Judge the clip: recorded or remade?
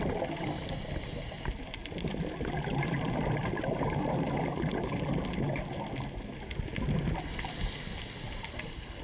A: recorded